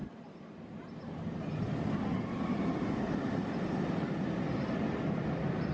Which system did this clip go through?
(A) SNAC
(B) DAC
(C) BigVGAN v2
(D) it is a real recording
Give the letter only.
D